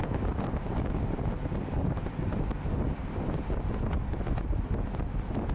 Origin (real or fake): real